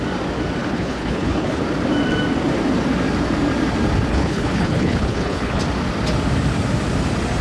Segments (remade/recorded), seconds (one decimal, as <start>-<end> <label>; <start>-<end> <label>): 0.0-0.6 recorded; 0.6-1.6 remade; 1.6-4.1 recorded; 4.1-5.6 remade; 5.6-7.4 recorded